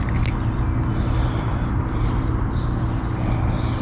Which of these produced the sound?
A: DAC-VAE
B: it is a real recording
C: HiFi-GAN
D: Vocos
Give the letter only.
B